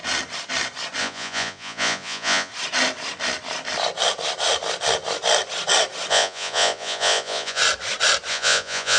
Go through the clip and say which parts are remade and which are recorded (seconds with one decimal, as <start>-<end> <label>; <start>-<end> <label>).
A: 0.0-1.0 recorded; 1.0-2.5 remade; 2.5-6.1 recorded; 6.1-7.6 remade; 7.6-8.3 recorded; 8.3-9.0 remade